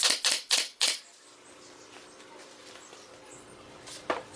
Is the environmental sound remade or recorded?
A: recorded